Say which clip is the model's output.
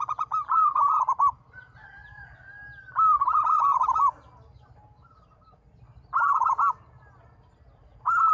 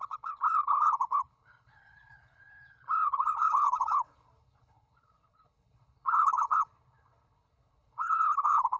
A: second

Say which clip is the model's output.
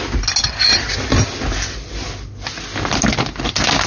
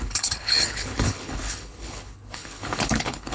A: second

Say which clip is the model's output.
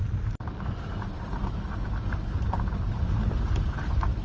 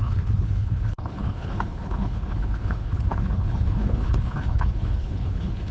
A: second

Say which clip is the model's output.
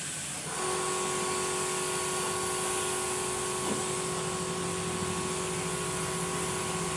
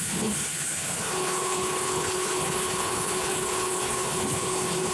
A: second